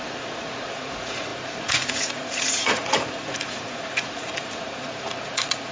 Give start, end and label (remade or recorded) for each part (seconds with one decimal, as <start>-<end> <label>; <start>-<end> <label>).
0.0-5.7 remade